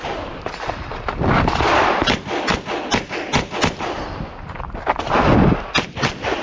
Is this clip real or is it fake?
real